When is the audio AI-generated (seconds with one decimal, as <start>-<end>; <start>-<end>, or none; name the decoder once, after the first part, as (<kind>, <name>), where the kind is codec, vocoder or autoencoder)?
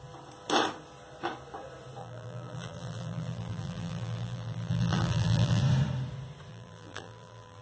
2.0-5.6 (vocoder, BigVGAN v2); 6.5-7.6